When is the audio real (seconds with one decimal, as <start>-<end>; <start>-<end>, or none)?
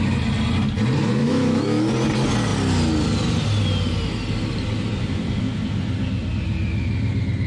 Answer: 0.0-1.2; 1.9-7.5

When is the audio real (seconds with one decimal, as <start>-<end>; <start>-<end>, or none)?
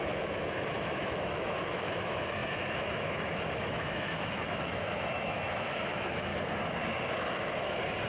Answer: 6.3-8.1